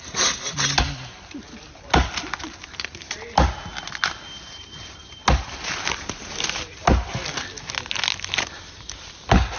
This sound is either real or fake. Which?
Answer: real